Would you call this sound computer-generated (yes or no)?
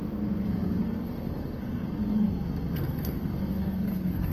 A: yes